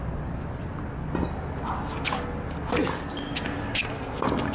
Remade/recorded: recorded